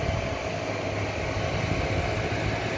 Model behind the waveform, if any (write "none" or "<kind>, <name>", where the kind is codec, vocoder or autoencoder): none